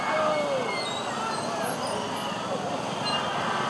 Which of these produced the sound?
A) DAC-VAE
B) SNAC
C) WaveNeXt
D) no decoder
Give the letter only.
D